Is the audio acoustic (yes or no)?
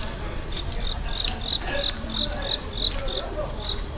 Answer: yes